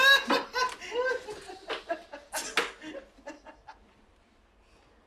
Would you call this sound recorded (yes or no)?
yes